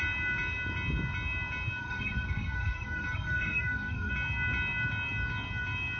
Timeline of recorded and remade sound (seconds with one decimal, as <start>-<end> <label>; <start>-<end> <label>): 0.0-1.8 recorded; 1.8-4.1 remade; 4.1-6.0 recorded